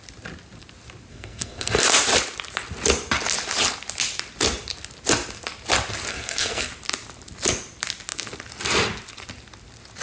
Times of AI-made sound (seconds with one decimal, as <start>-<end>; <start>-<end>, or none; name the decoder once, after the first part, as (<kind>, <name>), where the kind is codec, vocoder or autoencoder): 1.1-1.8 (codec, SNAC); 6.1-6.7